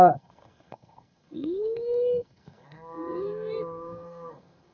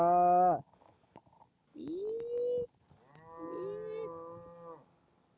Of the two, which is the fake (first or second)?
first